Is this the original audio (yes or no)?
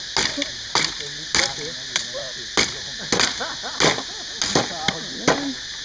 yes